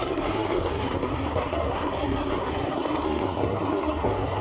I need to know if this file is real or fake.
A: fake